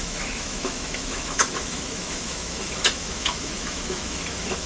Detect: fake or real fake